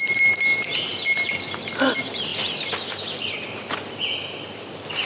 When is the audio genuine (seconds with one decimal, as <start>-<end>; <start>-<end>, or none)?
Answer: 0.0-5.1

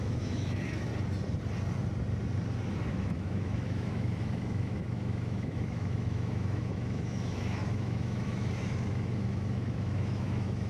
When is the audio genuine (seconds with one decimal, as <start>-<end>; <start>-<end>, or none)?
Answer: 0.9-2.9

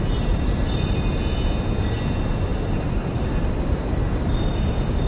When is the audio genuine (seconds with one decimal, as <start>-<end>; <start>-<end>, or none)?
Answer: 0.0-5.1